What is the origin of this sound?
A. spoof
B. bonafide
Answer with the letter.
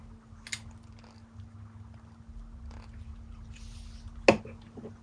B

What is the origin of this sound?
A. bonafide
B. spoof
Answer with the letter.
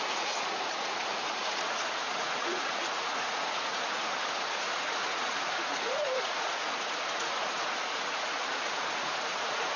B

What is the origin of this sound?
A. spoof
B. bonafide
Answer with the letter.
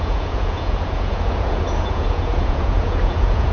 A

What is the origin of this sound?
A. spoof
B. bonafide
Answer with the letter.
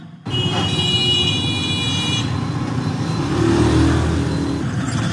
B